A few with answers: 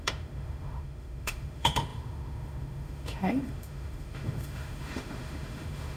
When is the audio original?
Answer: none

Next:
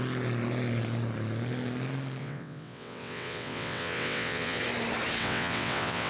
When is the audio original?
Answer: 0.0-2.2; 4.6-5.2

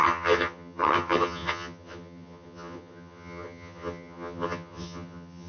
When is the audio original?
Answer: none